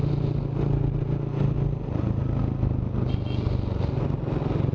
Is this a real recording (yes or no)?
yes